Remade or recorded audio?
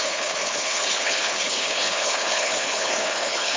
remade